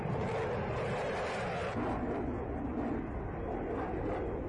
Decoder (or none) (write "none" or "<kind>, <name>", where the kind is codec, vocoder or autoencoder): none